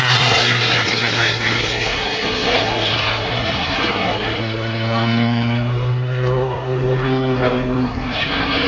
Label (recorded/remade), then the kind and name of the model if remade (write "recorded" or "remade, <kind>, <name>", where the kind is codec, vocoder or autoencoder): remade, codec, SNAC